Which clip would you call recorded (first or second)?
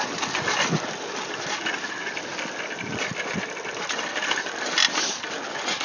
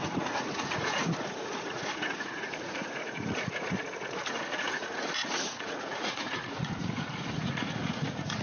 first